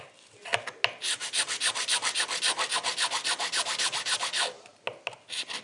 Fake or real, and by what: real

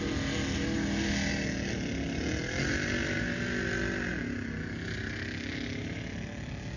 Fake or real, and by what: real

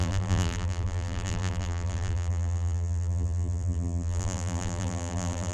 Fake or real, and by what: fake, vocoder, BigVGAN v2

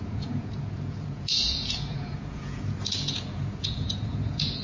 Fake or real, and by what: fake, vocoder, Vocos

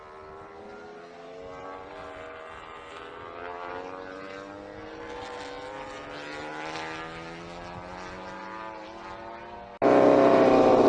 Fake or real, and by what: real